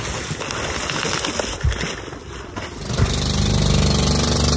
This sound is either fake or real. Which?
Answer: real